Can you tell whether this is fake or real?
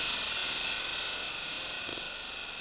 real